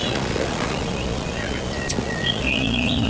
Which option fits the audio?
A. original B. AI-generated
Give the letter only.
B